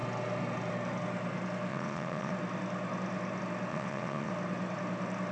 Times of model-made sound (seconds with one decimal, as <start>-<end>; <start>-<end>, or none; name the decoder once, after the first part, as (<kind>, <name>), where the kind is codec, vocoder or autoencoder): 1.7-2.3 (vocoder, WaveNeXt); 3.7-4.3